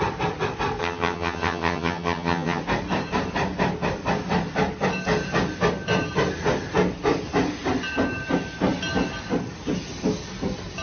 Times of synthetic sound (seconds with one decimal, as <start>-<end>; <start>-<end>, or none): 0.8-2.6